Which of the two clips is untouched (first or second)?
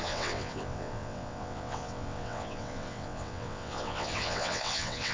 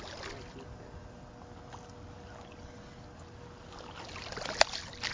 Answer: second